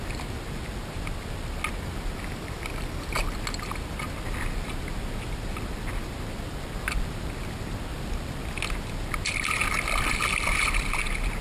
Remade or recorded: recorded